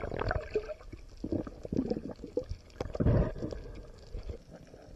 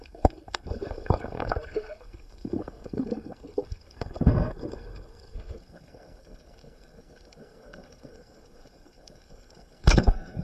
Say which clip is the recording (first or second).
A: first